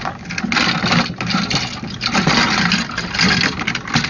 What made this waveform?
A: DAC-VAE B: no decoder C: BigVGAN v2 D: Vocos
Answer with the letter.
B